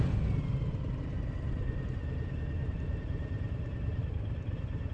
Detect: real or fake real